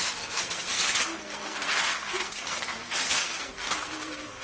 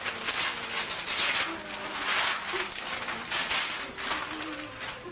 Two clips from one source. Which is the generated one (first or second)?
first